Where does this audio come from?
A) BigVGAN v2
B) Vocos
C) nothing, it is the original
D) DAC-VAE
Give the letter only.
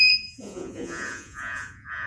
B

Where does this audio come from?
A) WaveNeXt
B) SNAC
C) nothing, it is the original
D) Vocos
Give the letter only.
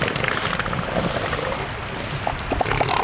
C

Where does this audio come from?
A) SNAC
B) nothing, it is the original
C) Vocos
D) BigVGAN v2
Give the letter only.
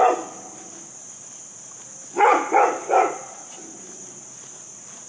B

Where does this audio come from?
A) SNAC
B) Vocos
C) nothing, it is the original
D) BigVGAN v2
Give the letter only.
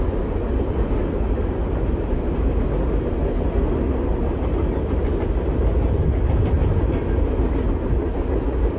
C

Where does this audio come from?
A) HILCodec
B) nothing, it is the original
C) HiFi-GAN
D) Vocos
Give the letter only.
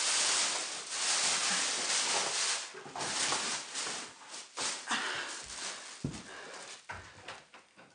B